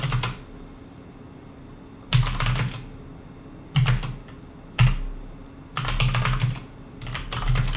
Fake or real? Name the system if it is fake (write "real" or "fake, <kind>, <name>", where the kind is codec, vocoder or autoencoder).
real